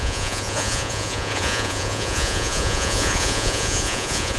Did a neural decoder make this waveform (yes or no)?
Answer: yes